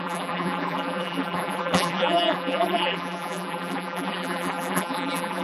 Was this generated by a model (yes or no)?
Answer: yes